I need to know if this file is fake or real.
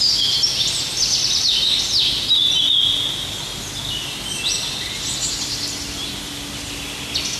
real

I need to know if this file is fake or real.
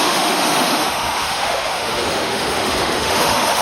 fake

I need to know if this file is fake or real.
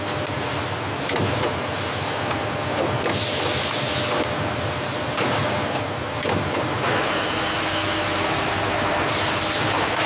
real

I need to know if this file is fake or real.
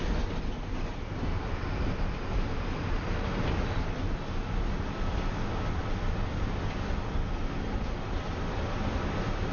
real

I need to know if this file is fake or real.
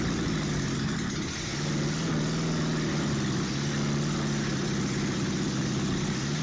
real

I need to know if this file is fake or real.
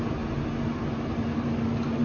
real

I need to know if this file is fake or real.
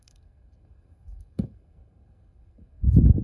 fake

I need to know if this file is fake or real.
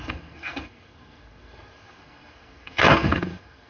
fake